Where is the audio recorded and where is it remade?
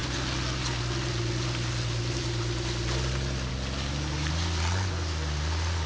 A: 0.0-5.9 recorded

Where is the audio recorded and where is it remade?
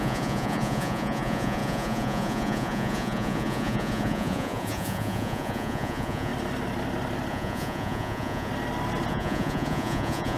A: 0.0-6.3 remade; 6.3-7.3 recorded; 7.3-8.5 remade; 8.5-9.1 recorded; 9.1-10.4 remade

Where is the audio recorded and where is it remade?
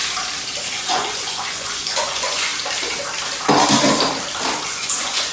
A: 0.0-0.7 recorded; 0.7-2.5 remade; 2.5-4.7 recorded; 4.7-5.3 remade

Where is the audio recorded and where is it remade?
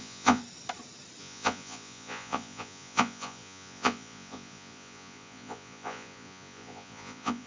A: 0.0-0.4 remade; 0.4-1.2 recorded; 1.2-7.5 remade